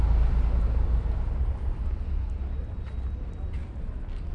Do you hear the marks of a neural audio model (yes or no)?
no